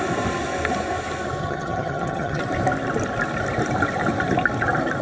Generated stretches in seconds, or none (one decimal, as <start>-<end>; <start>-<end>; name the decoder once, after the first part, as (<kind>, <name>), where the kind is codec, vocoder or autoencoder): 1.4-2.4 (vocoder, HiFi-GAN)